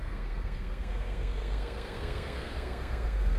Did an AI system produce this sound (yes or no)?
yes